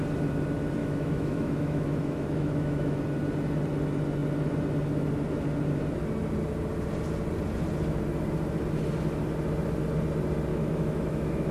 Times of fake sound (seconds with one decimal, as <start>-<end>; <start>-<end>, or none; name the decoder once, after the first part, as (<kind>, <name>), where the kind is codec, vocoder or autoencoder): 0.8-3.0 (autoencoder, DAC-VAE); 10.5-11.5